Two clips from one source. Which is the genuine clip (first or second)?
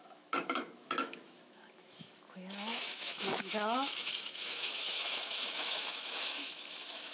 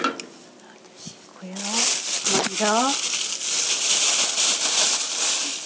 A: second